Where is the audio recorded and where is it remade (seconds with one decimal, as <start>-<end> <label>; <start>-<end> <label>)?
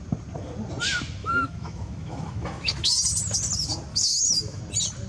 0.0-1.2 recorded; 1.2-2.9 remade; 2.9-3.9 recorded; 3.9-4.6 remade; 4.6-5.1 recorded